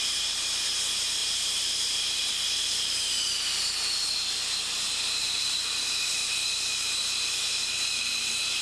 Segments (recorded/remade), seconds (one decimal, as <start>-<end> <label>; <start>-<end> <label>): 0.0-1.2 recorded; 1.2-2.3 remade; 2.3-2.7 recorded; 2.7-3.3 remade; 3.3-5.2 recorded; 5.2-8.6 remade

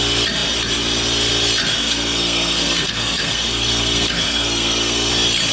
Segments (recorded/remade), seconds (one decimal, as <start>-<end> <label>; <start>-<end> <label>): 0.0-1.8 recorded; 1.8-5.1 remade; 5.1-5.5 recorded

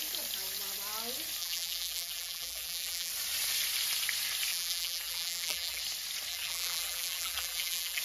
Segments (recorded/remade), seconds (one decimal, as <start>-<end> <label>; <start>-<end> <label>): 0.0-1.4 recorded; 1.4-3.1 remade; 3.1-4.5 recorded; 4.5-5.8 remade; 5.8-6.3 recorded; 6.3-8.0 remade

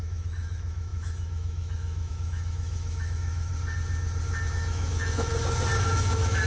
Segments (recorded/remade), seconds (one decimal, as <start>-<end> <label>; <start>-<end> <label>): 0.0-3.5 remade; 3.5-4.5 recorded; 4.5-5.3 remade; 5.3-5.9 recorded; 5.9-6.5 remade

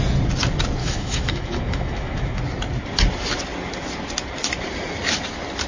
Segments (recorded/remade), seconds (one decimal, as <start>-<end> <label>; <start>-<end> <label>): 0.0-0.8 recorded; 0.8-2.4 remade; 2.4-5.7 recorded

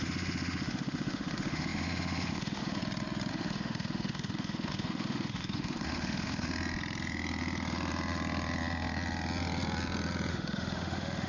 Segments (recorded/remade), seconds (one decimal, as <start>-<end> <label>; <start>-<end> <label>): 0.0-2.8 remade; 2.8-3.3 recorded; 3.3-6.5 remade; 6.5-10.3 recorded; 10.3-11.3 remade

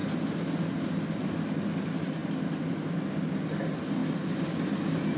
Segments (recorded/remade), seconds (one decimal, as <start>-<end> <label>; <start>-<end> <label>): 0.0-5.2 recorded